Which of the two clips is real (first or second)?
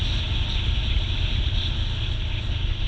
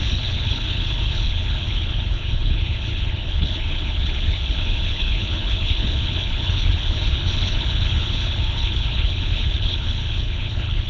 first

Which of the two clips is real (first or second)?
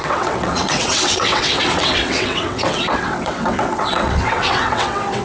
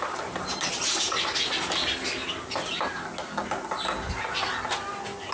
second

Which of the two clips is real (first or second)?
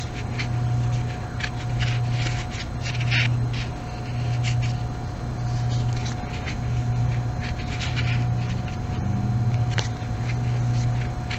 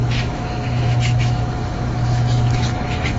first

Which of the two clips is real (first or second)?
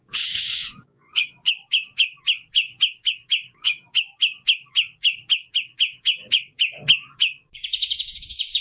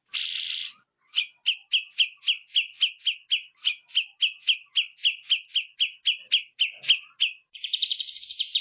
second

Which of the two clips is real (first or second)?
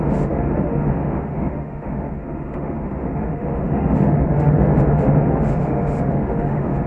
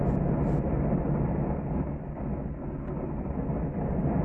second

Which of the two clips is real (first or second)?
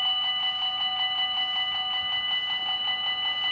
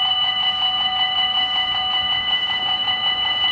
first